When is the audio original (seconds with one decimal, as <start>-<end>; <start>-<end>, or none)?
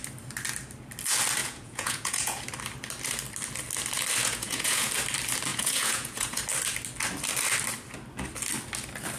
0.0-1.4; 2.4-4.2; 4.9-5.5; 6.4-9.2